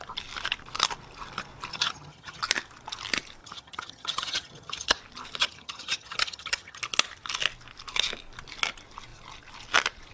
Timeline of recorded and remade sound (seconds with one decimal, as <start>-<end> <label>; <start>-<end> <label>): 0.0-1.7 recorded; 1.7-2.4 remade; 2.4-3.4 recorded; 3.4-5.0 remade; 5.0-5.4 recorded; 5.4-6.8 remade; 6.8-10.1 recorded